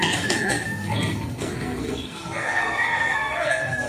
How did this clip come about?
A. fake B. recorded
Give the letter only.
A